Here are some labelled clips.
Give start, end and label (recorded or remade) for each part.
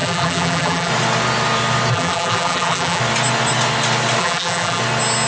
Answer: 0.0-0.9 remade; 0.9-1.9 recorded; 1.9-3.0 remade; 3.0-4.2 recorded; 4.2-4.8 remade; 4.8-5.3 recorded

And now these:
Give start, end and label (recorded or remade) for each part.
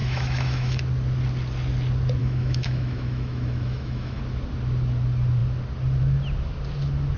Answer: 0.0-0.8 remade; 0.8-2.2 recorded; 2.2-4.2 remade; 4.2-7.2 recorded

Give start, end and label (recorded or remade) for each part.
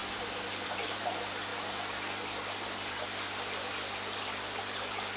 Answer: 0.0-0.5 recorded; 0.5-1.5 remade; 1.5-4.6 recorded; 4.6-5.2 remade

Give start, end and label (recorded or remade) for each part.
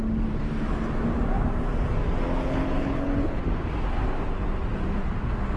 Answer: 0.0-2.4 recorded; 2.4-3.4 remade; 3.4-5.6 recorded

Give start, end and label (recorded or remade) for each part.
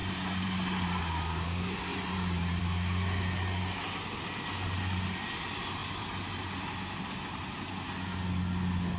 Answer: 0.0-1.0 remade; 1.0-1.9 recorded; 1.9-2.6 remade; 2.6-9.0 recorded